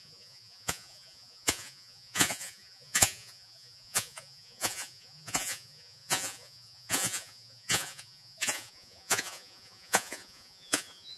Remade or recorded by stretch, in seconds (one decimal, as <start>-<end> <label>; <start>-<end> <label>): 0.0-11.2 remade